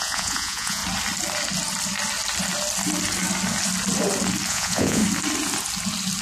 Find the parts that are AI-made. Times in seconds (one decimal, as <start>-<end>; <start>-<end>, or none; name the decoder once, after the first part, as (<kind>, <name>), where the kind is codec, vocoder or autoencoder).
0.0-0.8 (vocoder, Vocos); 4.5-5.0